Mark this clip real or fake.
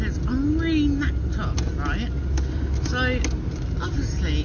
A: real